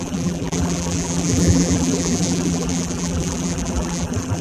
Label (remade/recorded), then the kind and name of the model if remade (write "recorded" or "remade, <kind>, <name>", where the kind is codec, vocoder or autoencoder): remade, vocoder, BigVGAN v2